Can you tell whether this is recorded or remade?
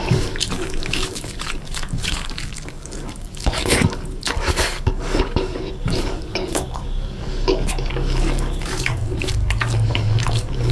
remade